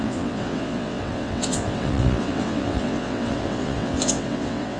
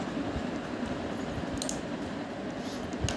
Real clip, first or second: second